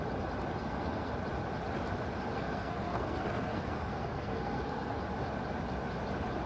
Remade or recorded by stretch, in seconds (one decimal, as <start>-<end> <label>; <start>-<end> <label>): 0.0-0.6 recorded; 0.6-1.1 remade; 1.1-2.3 recorded; 2.3-5.0 remade; 5.0-6.5 recorded

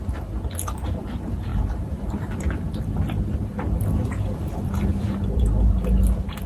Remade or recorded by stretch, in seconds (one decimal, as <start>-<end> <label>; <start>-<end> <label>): 0.0-1.5 recorded; 1.5-5.4 remade; 5.4-6.5 recorded

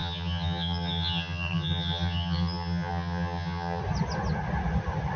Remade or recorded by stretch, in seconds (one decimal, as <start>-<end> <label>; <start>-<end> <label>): 0.0-3.8 remade; 3.8-5.2 recorded